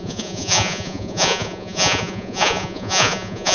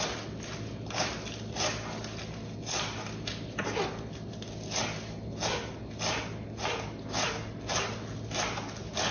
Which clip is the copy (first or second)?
first